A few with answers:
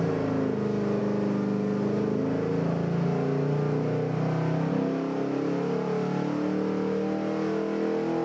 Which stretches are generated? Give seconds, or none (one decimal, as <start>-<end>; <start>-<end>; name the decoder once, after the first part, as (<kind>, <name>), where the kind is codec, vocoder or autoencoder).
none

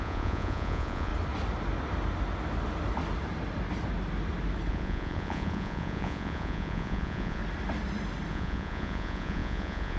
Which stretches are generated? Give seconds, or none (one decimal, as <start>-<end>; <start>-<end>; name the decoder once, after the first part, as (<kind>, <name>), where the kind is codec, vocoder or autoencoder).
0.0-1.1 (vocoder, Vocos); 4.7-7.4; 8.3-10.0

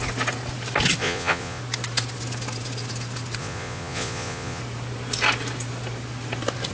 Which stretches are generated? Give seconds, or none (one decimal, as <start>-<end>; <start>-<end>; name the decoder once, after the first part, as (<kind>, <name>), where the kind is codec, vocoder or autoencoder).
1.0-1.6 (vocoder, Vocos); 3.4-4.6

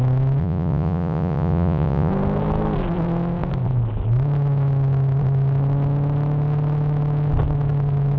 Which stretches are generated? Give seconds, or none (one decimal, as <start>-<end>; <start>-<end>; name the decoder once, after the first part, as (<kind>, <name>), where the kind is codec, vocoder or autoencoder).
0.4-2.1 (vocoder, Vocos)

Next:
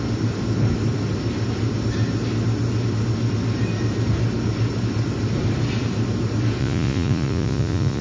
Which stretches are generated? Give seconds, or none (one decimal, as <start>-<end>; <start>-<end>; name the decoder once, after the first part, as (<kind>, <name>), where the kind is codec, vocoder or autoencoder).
6.6-8.0 (vocoder, Vocos)